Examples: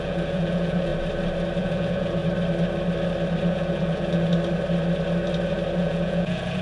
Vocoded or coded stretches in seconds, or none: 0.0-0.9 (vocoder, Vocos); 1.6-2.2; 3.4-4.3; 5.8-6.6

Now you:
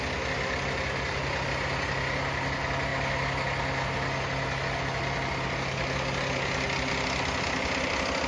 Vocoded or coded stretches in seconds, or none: none

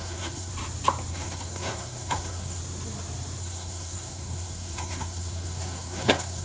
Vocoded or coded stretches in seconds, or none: 0.0-0.5 (codec, SNAC); 1.1-2.6; 3.4-6.4

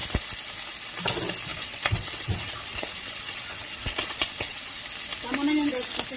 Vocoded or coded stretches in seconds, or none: 1.5-4.8 (vocoder, WaveNeXt)

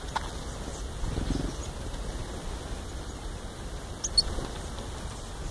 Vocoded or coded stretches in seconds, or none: none

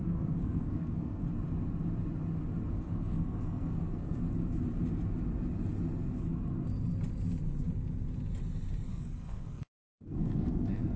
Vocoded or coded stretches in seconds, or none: 0.0-1.2 (codec, SNAC); 2.7-4.2; 8.9-11.0

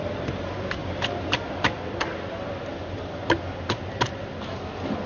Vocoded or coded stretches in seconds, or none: none